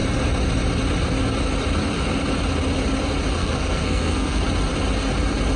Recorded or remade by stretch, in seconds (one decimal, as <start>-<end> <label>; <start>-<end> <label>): 0.0-3.4 recorded; 3.4-4.4 remade; 4.4-5.6 recorded